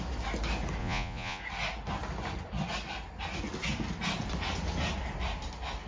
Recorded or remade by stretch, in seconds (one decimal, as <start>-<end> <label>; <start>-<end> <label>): 0.0-0.8 recorded; 0.8-1.4 remade; 1.4-5.9 recorded